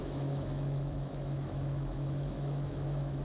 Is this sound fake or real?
fake